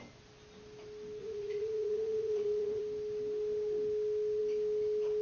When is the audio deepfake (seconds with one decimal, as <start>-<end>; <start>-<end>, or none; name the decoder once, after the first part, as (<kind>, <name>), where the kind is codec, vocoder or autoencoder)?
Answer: 1.2-2.8 (vocoder, Vocos)

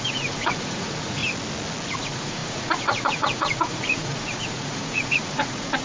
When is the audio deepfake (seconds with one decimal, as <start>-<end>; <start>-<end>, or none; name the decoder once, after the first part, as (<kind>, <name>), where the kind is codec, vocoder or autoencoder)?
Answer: 0.0-1.2 (vocoder, Vocos); 2.0-5.8